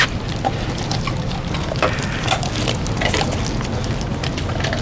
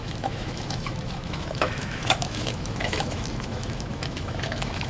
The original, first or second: first